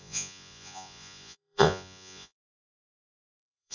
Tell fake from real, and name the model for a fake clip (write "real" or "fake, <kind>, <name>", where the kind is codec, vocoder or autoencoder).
fake, vocoder, Vocos